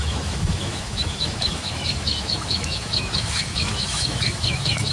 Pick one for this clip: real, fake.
fake